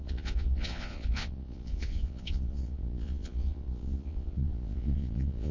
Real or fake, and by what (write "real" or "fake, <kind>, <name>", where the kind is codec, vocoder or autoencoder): fake, vocoder, Vocos